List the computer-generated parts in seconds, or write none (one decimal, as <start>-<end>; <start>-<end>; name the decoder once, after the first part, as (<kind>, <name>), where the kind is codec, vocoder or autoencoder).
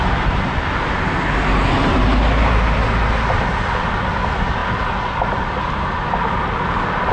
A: none